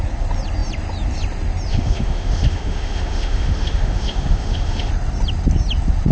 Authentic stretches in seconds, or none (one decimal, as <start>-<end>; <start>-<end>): 0.0-1.7; 4.9-6.1